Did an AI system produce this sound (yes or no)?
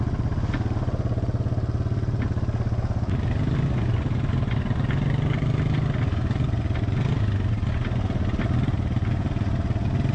no